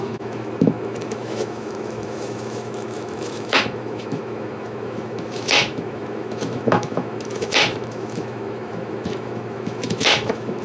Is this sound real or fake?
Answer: fake